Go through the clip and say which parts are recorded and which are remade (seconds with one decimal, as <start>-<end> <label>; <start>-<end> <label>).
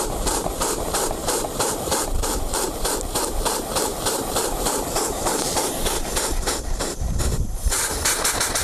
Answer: 0.0-1.2 recorded; 1.2-5.7 remade; 5.7-8.6 recorded